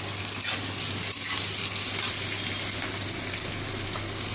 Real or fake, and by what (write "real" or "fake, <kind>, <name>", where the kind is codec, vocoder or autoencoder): real